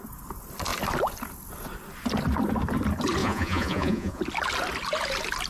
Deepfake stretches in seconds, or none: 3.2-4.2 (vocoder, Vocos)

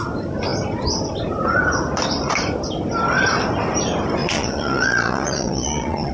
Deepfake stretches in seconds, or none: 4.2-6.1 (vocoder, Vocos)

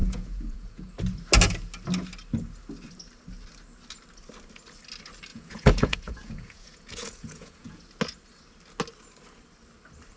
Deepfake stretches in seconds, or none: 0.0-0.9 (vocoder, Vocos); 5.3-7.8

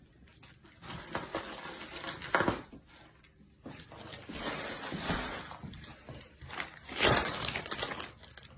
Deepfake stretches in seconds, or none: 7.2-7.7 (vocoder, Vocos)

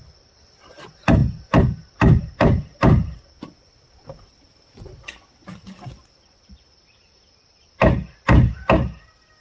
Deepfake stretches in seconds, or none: none